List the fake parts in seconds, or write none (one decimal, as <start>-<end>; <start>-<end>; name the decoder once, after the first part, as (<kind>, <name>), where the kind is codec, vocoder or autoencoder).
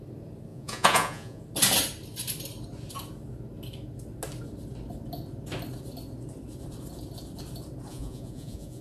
0.5-1.4 (vocoder, Vocos); 7.9-8.8